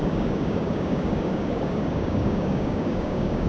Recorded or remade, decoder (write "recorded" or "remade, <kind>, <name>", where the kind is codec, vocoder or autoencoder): remade, codec, DAC